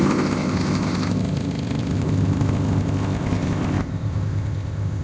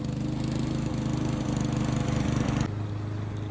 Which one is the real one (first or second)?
second